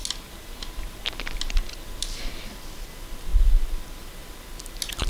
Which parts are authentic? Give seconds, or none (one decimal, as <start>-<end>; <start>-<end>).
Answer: 0.0-5.1